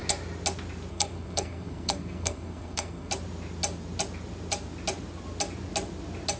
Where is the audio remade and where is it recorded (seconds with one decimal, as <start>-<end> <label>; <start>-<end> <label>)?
0.0-0.9 recorded; 0.9-3.1 remade; 3.1-6.4 recorded